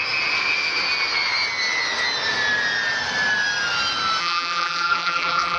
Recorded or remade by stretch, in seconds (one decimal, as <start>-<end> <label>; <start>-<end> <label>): 0.0-4.2 recorded; 4.2-5.6 remade

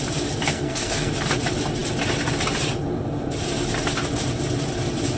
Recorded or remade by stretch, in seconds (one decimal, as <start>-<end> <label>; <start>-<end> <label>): 0.0-0.5 recorded; 0.5-1.1 remade; 1.1-5.2 recorded

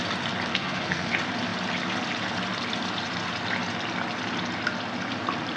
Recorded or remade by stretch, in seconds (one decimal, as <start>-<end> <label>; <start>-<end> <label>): 0.0-0.5 recorded; 0.5-1.1 remade; 1.1-5.6 recorded

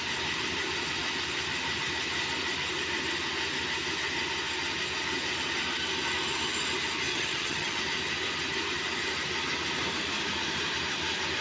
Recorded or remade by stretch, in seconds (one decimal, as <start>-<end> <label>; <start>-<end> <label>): 0.0-7.1 recorded; 7.1-7.8 remade; 7.8-11.4 recorded

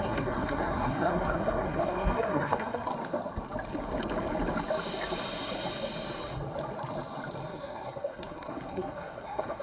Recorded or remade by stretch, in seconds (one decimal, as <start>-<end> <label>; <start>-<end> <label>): 0.0-2.9 remade; 2.9-7.4 recorded; 7.4-9.6 remade

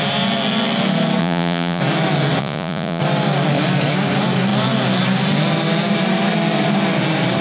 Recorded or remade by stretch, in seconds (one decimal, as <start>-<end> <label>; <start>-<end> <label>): 0.0-1.2 recorded; 1.2-1.8 remade; 1.8-2.4 recorded; 2.4-3.0 remade; 3.0-7.4 recorded

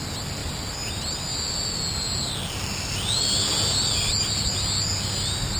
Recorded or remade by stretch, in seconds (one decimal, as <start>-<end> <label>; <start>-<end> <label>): 0.0-5.6 recorded